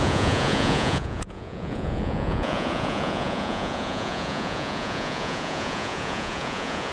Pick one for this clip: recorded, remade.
remade